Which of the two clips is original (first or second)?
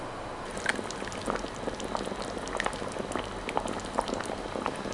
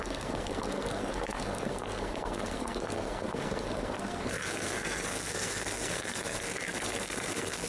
first